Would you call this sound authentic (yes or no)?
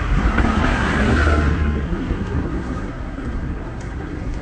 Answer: no